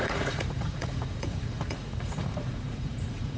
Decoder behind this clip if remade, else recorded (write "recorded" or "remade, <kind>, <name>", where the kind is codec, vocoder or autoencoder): remade, vocoder, Vocos